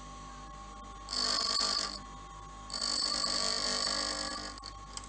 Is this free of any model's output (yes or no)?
yes